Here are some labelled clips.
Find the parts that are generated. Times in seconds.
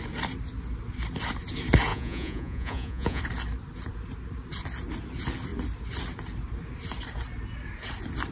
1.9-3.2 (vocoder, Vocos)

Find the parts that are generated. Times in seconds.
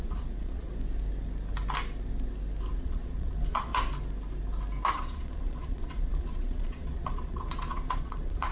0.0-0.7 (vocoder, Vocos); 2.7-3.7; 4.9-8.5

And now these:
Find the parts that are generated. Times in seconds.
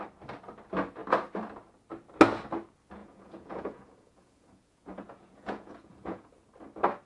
3.0-6.3 (vocoder, Vocos)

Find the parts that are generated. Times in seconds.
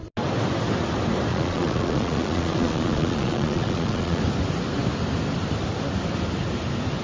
1.3-4.2 (vocoder, Vocos)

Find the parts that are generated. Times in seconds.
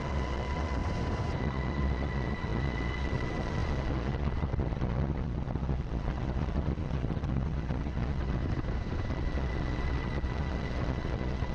0.0-0.8 (vocoder, Vocos); 1.4-8.4; 9.1-11.5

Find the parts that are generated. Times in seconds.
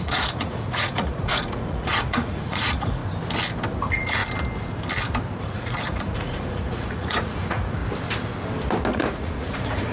0.0-3.0 (vocoder, Vocos); 3.8-4.2; 5.4-7.8; 8.9-9.9